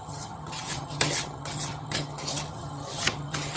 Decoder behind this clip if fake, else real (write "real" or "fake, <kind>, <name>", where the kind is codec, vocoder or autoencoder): fake, vocoder, HiFi-GAN